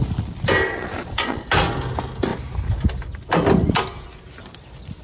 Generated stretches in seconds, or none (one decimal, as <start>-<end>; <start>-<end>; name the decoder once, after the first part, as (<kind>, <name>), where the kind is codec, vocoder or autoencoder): 0.7-1.5 (vocoder, Vocos)